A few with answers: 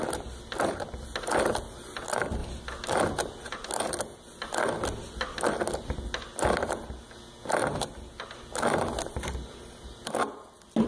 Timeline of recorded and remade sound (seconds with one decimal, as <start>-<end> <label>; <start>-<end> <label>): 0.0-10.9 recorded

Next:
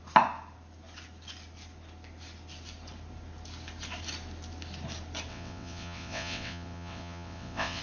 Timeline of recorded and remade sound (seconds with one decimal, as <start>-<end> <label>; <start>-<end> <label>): 0.0-5.3 recorded; 5.3-7.8 remade

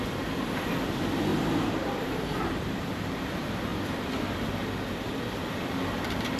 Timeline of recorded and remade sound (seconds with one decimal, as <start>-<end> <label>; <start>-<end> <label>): 0.0-1.3 recorded; 1.3-3.2 remade; 3.2-6.4 recorded